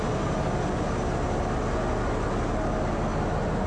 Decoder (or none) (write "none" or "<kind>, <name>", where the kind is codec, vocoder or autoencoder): none